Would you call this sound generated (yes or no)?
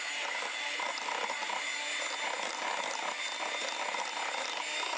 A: no